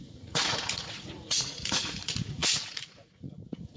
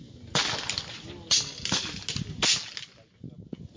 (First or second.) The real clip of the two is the second